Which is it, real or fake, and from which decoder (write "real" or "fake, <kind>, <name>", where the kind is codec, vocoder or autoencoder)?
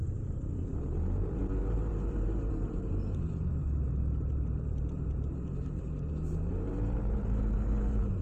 fake, vocoder, BigVGAN v2